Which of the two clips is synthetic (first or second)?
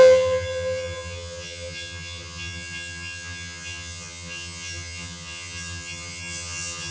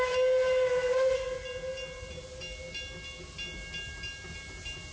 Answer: first